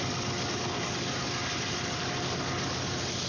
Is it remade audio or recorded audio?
recorded